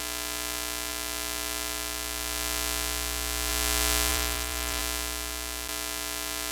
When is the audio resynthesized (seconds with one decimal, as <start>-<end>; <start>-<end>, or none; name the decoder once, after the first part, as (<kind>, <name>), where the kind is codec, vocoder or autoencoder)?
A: 4.1-4.8 (vocoder, BigVGAN v2)